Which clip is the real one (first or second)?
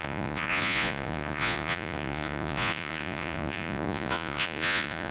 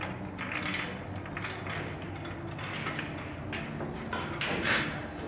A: second